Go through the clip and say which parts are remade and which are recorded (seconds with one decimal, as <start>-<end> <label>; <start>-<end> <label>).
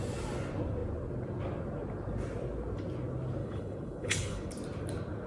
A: 0.0-3.4 recorded; 3.4-4.5 remade; 4.5-5.3 recorded